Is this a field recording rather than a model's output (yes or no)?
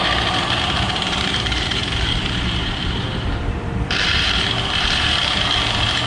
no